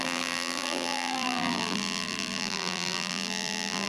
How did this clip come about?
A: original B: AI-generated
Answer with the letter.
B